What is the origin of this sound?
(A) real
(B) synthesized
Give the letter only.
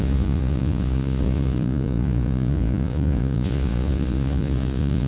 B